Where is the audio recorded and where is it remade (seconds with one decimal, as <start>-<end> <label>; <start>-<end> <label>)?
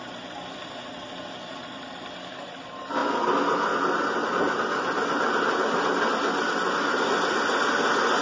0.0-8.2 recorded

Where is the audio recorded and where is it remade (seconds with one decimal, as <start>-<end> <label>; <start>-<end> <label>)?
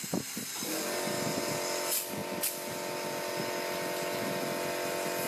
0.0-5.3 recorded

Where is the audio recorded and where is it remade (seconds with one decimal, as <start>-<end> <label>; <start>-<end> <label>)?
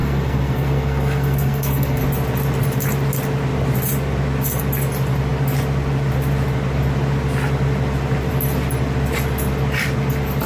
0.0-2.0 remade; 2.0-10.5 recorded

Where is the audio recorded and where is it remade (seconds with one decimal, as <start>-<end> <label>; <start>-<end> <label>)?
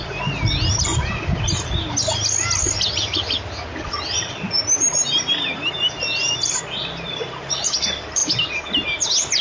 0.0-9.4 recorded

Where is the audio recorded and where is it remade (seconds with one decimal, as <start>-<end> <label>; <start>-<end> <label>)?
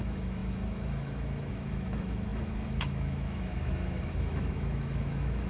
0.0-5.5 remade